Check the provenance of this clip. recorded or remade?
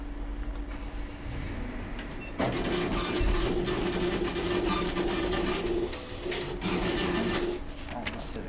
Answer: recorded